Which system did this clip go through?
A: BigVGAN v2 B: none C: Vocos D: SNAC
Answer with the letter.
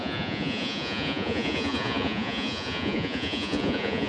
C